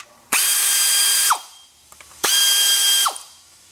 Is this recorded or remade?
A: remade